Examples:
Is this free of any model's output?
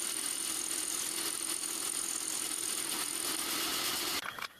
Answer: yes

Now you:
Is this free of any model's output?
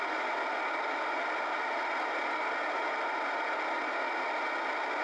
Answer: yes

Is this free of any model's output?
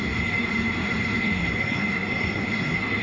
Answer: no